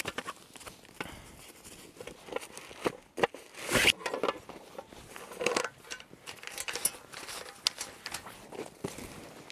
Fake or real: real